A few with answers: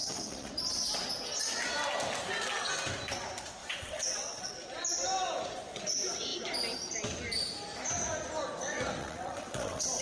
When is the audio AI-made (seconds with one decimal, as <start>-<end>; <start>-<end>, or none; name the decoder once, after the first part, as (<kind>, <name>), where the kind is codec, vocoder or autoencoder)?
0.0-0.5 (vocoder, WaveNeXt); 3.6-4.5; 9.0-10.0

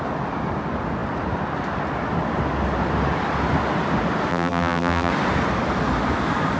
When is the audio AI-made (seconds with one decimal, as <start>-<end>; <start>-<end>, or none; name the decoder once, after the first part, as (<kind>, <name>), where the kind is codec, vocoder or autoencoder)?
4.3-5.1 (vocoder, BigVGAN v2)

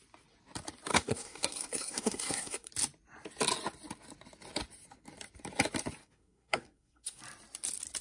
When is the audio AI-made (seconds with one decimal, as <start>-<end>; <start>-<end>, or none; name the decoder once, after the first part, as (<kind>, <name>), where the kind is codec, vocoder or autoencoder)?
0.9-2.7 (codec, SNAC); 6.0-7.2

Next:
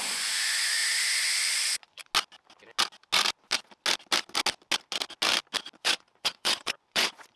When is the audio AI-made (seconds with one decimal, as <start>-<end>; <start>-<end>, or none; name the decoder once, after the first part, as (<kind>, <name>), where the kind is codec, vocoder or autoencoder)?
0.0-0.8 (vocoder, Vocos); 1.6-2.0; 5.7-7.4

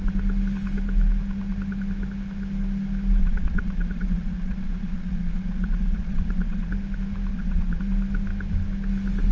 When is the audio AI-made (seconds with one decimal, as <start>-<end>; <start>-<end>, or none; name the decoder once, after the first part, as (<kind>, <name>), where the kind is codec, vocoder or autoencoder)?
3.2-6.7 (vocoder, Vocos); 7.3-7.8

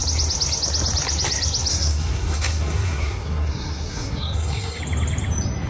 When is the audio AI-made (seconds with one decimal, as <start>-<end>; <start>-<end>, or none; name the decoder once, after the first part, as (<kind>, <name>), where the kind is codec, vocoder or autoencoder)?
1.7-4.8 (codec, SNAC)

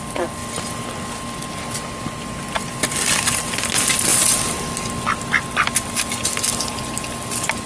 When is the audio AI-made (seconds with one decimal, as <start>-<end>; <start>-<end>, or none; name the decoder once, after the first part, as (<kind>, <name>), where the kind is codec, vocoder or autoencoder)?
2.7-3.3 (vocoder, BigVGAN v2)

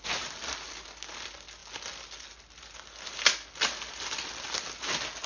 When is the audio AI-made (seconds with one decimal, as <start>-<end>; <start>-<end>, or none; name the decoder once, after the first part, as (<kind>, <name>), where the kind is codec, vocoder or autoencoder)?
none